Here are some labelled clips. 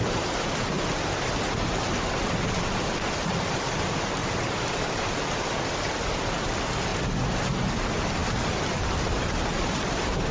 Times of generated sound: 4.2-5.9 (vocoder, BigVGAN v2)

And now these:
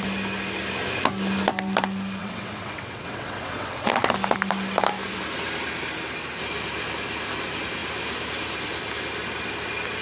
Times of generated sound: 2.2-3.9 (vocoder, WaveNeXt)

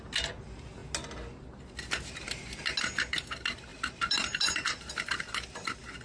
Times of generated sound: 3.7-4.8 (vocoder, BigVGAN v2)

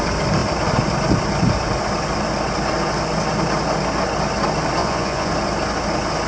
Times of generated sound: 4.8-5.3 (vocoder, Vocos)

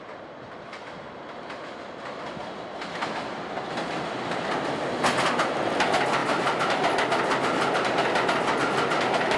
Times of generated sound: none

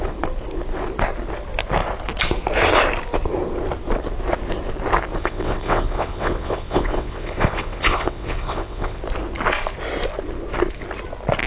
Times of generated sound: 5.2-9.0 (vocoder, WaveNeXt)